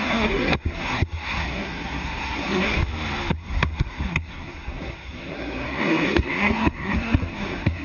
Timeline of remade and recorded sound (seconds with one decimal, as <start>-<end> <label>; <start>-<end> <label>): 0.0-2.8 remade; 2.8-3.3 recorded; 3.3-7.8 remade